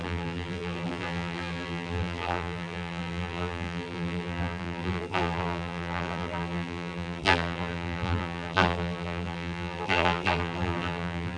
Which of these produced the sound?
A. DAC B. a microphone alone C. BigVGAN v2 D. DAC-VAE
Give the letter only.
C